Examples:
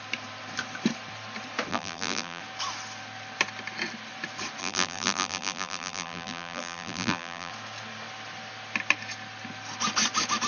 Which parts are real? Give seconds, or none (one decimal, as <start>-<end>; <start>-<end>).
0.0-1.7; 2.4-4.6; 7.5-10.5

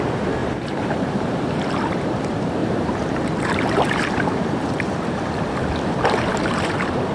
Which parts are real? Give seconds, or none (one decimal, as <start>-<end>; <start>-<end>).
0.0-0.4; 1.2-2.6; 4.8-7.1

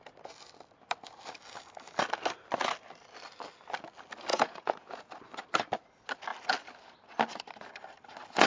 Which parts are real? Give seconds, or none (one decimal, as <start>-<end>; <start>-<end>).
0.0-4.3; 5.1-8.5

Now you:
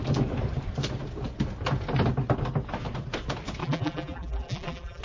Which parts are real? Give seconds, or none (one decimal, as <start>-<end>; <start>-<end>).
0.0-3.6

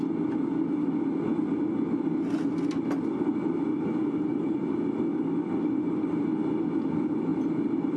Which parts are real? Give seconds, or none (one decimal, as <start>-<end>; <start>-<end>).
0.0-8.0